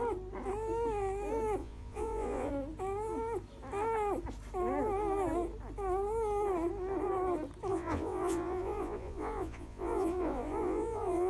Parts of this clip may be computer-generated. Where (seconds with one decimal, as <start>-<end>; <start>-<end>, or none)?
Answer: 1.6-2.5; 7.7-11.3